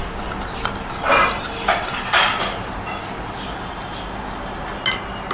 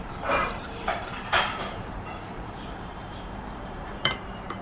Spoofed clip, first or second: second